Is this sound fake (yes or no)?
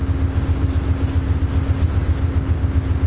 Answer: no